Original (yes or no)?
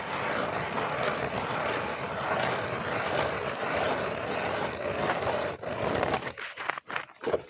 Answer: yes